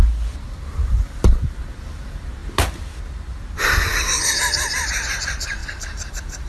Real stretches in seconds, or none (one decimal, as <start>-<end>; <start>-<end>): 2.4-3.3; 5.6-6.1